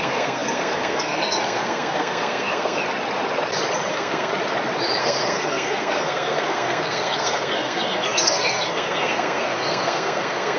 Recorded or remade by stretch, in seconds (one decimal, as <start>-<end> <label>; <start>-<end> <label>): 0.0-2.8 remade; 2.8-3.9 recorded; 3.9-4.3 remade; 4.3-5.0 recorded; 5.0-10.6 remade